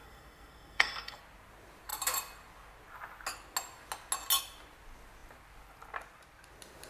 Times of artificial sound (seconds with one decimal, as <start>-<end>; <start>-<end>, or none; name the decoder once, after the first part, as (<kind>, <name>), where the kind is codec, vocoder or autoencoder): 0.0-1.2 (codec, SNAC)